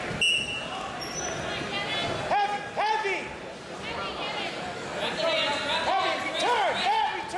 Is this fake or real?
real